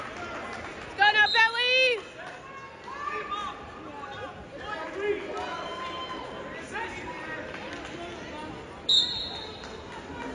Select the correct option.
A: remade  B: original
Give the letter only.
B